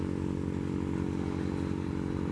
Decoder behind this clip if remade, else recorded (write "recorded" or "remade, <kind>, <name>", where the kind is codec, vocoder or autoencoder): recorded